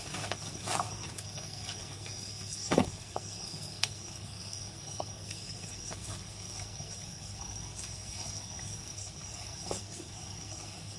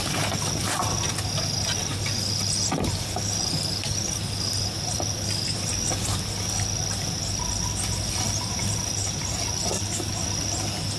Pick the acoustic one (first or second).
second